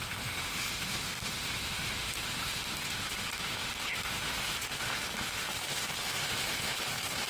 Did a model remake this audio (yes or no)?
yes